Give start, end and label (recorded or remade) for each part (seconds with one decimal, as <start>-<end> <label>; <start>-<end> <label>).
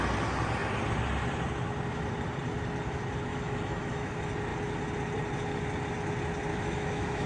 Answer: 0.0-3.3 recorded; 3.3-4.1 remade; 4.1-6.5 recorded; 6.5-7.3 remade